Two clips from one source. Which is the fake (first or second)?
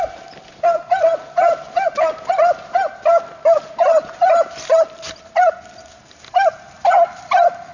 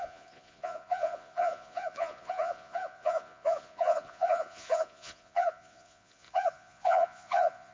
second